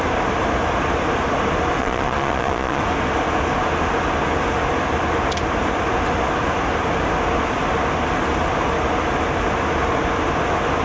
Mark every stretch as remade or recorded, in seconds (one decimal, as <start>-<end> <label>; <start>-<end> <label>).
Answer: 0.0-1.8 recorded; 1.8-2.8 remade; 2.8-10.8 recorded

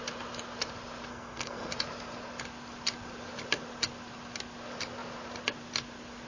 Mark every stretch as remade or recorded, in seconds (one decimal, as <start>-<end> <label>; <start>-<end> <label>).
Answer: 0.0-1.1 recorded; 1.1-1.7 remade; 1.7-6.3 recorded

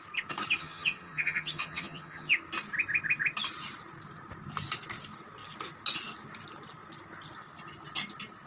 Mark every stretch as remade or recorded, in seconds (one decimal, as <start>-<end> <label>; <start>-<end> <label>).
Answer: 0.0-0.6 recorded; 0.6-2.3 remade; 2.3-8.5 recorded

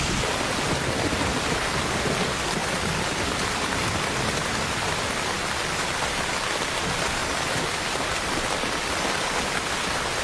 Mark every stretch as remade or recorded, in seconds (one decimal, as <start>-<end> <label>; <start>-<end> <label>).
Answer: 0.0-3.8 remade; 3.8-5.6 recorded; 5.6-10.2 remade

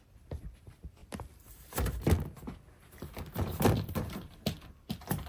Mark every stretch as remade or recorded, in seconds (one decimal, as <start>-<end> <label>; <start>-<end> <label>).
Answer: 0.0-1.0 remade; 1.0-2.9 recorded; 2.9-5.3 remade

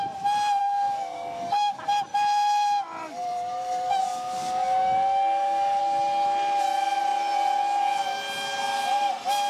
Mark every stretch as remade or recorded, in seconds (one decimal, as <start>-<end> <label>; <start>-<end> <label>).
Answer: 0.0-0.6 recorded; 0.6-1.8 remade; 1.8-3.0 recorded; 3.0-5.8 remade; 5.8-9.5 recorded

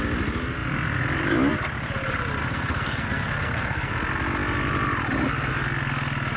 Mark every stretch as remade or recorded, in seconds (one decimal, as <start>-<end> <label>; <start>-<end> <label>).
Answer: 0.0-2.4 recorded; 2.4-3.9 remade; 3.9-6.4 recorded

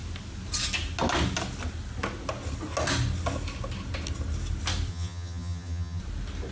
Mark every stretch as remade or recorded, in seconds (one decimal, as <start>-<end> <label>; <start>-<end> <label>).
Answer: 0.0-4.9 recorded; 4.9-6.0 remade; 6.0-6.5 recorded